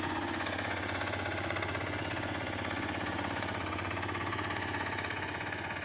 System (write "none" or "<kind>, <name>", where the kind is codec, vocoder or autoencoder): vocoder, Vocos